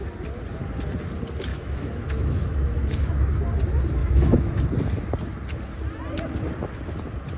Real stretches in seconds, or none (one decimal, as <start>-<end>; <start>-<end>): 0.0-1.5; 3.4-4.0; 4.6-7.4